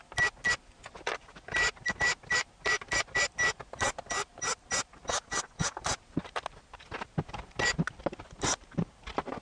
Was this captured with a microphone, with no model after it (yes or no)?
yes